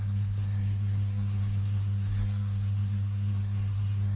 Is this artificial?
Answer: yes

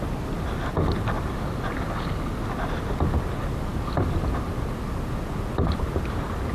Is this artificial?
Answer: no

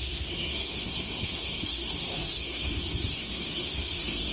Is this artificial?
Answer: yes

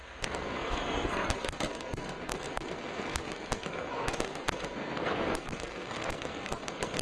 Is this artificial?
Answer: yes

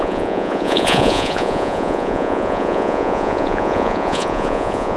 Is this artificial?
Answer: yes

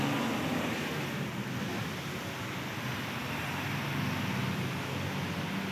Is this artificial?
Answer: no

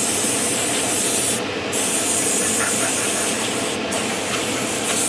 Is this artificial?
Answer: no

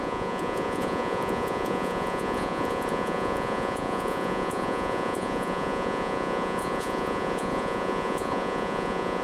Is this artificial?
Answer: yes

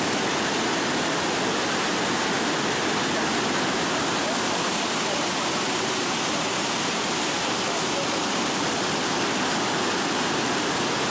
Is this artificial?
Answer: no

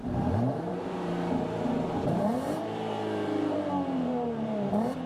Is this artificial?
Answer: yes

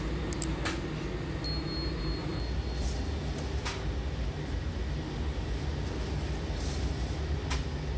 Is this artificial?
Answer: no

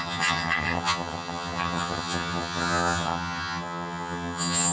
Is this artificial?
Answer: yes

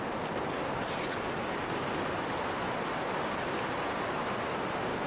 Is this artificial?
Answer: no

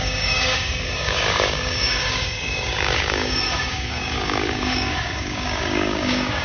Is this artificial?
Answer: yes